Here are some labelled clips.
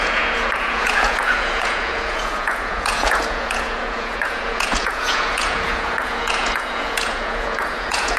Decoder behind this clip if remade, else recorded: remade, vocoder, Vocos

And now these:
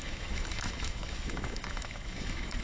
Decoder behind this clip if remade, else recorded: remade, autoencoder, DAC-VAE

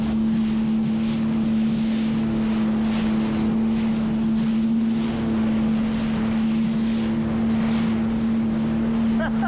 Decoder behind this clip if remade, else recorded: recorded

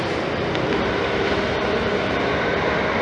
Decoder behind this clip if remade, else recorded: remade, vocoder, BigVGAN v2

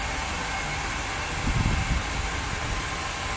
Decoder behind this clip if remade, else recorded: recorded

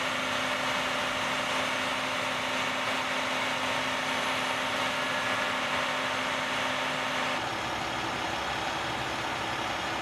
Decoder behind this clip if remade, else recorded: recorded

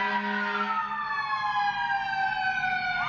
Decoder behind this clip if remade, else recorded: recorded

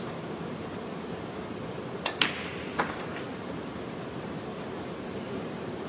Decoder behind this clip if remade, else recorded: remade, vocoder, BigVGAN v2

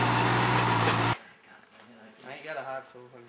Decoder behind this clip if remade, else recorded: recorded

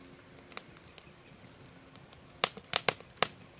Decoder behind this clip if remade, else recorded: recorded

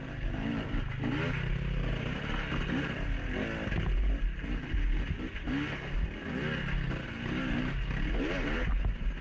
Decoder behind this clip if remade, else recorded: recorded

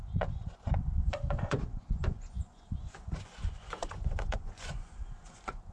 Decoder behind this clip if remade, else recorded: remade, vocoder, Vocos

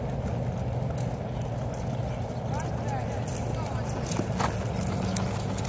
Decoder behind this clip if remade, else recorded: recorded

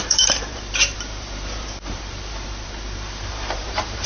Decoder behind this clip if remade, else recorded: remade, vocoder, BigVGAN v2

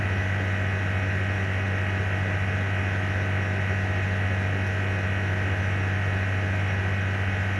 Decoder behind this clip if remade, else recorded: recorded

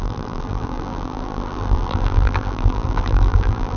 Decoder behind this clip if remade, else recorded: remade, vocoder, BigVGAN v2